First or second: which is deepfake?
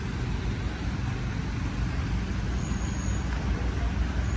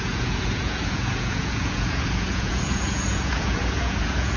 second